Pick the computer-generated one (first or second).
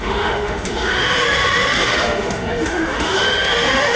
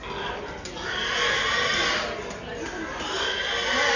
first